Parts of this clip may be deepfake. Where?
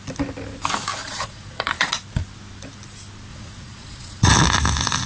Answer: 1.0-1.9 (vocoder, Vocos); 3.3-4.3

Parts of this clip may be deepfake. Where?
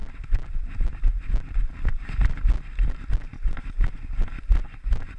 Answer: none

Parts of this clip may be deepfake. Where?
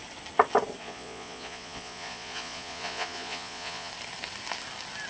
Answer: 0.8-3.9 (vocoder, Vocos)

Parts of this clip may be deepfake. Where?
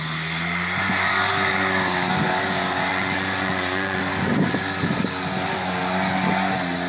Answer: 2.9-4.0 (vocoder, Vocos)